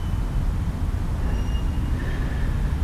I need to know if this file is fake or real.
real